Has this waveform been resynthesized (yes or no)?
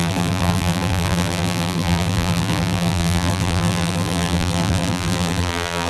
yes